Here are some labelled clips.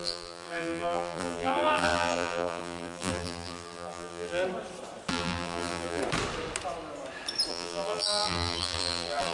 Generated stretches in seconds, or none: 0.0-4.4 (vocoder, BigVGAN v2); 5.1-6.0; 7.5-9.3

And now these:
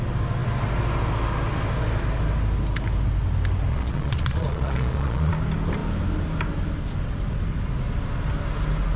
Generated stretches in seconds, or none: 3.7-5.3 (vocoder, Vocos)

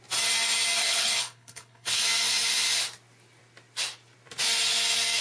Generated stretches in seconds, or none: 0.8-2.0 (codec, HILCodec)

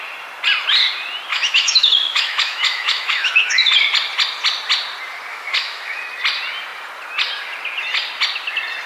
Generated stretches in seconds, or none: 1.3-3.7 (autoencoder, DAC-VAE); 5.3-6.0

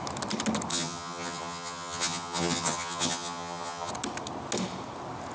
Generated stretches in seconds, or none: 0.7-3.9 (vocoder, HiFi-GAN)

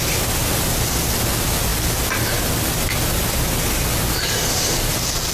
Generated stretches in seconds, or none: none

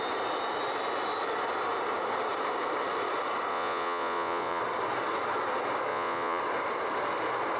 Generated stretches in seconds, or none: 3.5-4.6 (vocoder, Vocos); 5.9-6.4